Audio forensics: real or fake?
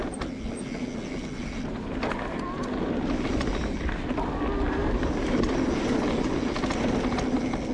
real